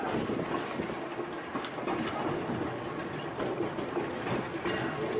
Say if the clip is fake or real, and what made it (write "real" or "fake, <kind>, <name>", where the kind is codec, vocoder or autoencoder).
real